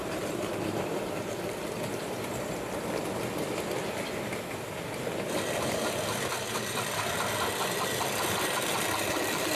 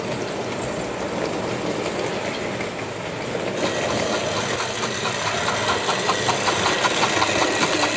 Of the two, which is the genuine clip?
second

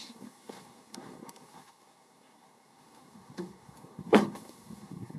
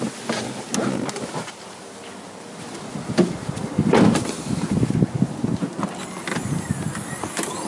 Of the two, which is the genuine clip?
second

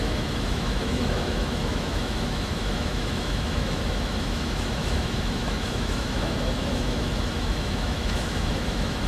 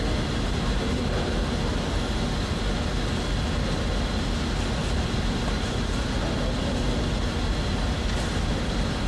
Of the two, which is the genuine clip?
second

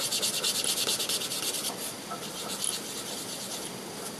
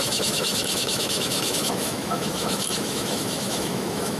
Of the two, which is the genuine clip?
first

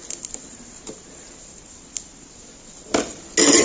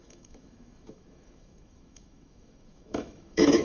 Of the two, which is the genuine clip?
first